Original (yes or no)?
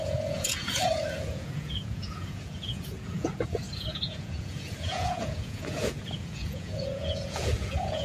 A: no